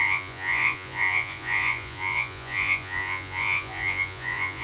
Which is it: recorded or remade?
remade